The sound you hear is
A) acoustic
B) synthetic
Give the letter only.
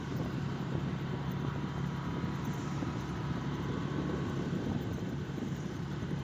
B